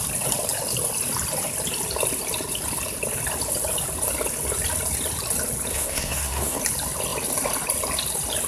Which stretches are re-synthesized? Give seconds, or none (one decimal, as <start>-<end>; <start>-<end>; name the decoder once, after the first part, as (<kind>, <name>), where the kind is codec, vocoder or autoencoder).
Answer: 5.7-6.6 (codec, SNAC)